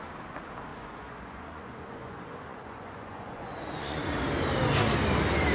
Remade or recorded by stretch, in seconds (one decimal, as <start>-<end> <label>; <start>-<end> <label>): 0.0-0.7 recorded; 0.7-4.0 remade; 4.0-5.5 recorded